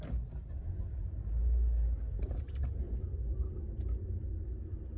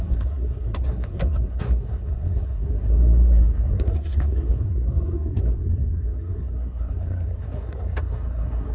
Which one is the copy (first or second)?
second